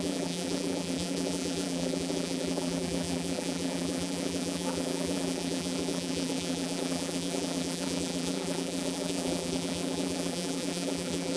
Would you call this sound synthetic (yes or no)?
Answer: yes